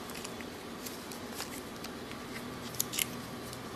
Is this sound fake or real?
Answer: real